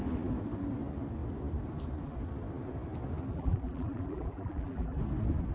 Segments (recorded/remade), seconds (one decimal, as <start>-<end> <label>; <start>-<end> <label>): 0.0-3.3 recorded; 3.3-5.0 remade; 5.0-5.5 recorded